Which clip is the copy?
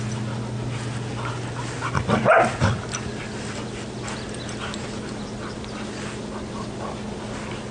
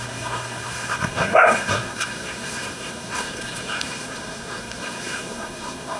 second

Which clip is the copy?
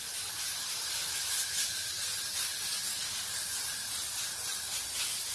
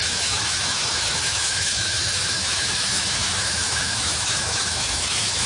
second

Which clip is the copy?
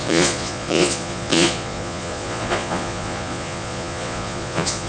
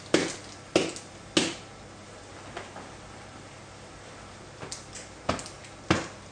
first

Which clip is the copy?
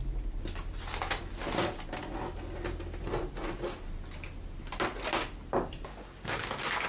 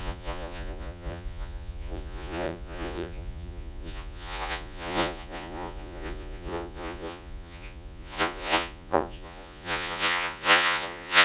second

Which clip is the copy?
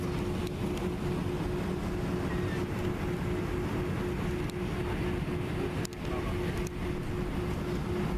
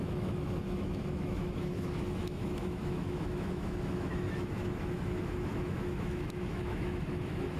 second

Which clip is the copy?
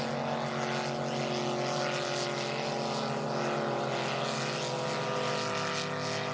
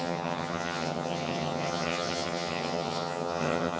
second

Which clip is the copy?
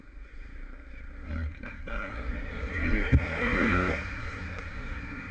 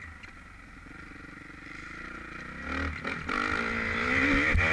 first